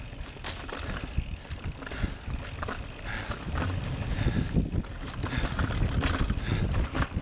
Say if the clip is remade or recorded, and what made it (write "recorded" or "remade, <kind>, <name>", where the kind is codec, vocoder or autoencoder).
recorded